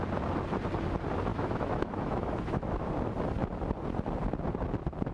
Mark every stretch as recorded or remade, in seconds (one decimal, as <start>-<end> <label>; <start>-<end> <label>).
0.0-1.3 recorded; 1.3-2.9 remade; 2.9-5.1 recorded